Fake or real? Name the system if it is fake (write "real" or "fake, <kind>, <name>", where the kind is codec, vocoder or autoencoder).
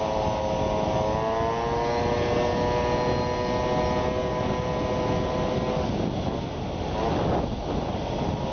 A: real